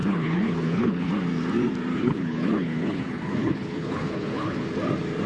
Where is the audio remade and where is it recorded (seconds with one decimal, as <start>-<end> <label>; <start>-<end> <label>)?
0.0-1.1 remade; 1.1-1.9 recorded; 1.9-4.7 remade; 4.7-5.3 recorded